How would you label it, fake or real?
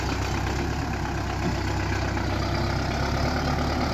real